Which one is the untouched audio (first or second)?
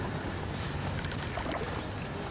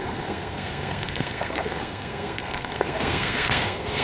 first